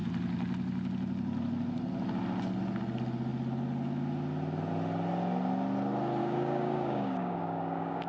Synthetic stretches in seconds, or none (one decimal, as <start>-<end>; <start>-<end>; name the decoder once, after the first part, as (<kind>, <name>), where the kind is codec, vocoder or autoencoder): 6.2-8.1 (codec, DAC)

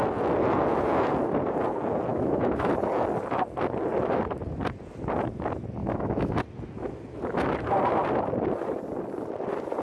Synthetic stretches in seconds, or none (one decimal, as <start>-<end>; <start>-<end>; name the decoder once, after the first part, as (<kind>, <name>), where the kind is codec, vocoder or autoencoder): 2.1-2.7 (autoencoder, DAC-VAE); 5.8-6.4

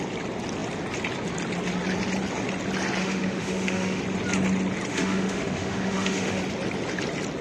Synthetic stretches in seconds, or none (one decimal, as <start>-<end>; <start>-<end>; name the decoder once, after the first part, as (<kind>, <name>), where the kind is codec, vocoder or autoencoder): 3.0-4.0 (autoencoder, DAC-VAE); 4.9-6.4

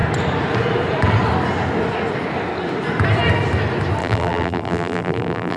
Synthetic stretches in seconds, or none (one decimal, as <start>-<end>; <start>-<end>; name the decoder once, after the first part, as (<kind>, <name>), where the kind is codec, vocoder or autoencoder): 4.0-5.6 (vocoder, BigVGAN v2)

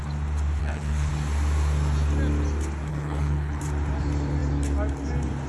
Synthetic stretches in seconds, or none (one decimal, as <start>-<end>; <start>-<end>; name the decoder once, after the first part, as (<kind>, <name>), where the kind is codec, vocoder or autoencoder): 0.6-1.1 (codec, HILCodec); 2.9-3.6

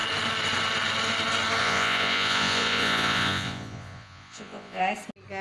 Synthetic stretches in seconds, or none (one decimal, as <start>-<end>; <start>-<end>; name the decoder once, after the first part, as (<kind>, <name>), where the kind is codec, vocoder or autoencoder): 1.6-4.8 (vocoder, Vocos)